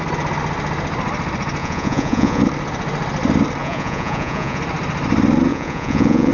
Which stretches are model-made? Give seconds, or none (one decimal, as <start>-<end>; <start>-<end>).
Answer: 1.6-2.4; 3.6-4.6; 5.5-6.3